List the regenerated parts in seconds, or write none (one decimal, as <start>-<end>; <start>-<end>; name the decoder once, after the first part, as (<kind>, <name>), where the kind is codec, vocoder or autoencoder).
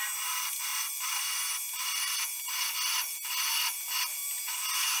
none